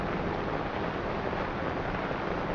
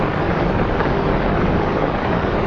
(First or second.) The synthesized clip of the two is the second